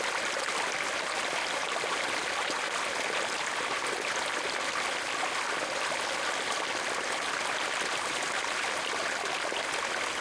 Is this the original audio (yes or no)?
yes